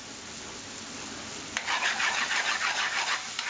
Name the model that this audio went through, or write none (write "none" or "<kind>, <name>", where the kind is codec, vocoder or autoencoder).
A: none